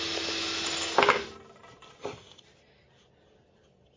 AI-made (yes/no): no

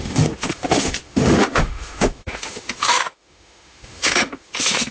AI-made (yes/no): yes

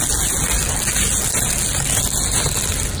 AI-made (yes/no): no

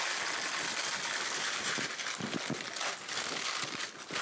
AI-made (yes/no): no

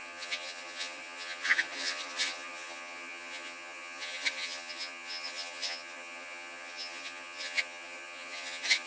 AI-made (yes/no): yes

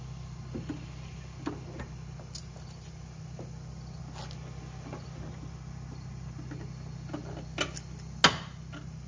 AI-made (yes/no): no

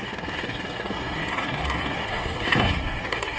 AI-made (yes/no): yes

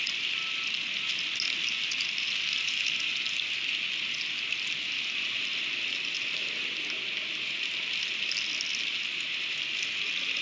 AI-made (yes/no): no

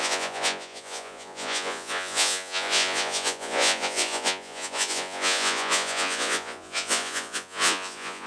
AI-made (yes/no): yes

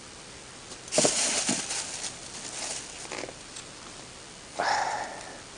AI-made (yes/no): no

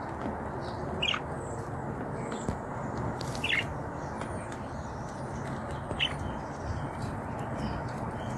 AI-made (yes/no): no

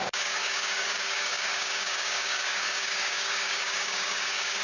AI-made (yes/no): yes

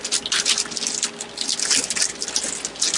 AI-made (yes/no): no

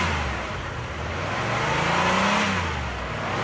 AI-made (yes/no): no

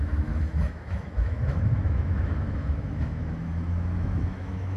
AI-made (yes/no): yes